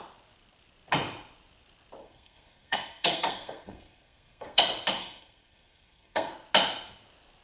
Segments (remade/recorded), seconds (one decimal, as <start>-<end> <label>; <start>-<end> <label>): 0.0-2.0 recorded; 2.0-4.6 remade; 4.6-5.0 recorded; 5.0-6.3 remade; 6.3-7.4 recorded